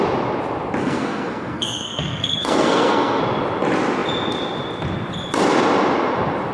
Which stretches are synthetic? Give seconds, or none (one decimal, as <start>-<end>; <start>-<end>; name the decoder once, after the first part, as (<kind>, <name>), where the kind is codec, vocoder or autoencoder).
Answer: 0.8-3.2 (codec, SNAC)

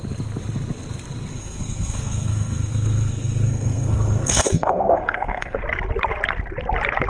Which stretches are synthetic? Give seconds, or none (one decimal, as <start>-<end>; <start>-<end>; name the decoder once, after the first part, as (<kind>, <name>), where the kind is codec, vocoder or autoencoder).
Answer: 1.3-5.6 (codec, SNAC)

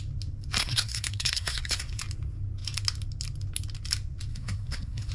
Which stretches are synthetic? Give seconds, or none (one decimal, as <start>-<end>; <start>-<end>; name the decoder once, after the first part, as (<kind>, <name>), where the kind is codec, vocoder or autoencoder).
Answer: 0.6-2.0 (codec, SNAC); 4.3-5.1

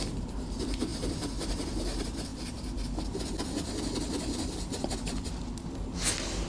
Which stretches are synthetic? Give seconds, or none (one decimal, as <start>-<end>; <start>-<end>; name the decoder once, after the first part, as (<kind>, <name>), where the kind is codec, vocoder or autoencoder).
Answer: none

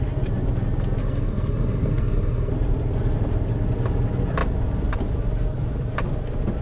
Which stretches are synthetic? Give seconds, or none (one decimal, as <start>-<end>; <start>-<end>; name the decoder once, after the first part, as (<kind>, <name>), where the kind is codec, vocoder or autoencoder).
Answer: 1.0-2.5 (codec, SNAC)

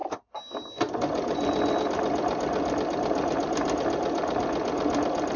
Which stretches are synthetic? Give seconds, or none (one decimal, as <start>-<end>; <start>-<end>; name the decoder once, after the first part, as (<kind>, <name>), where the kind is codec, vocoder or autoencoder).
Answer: none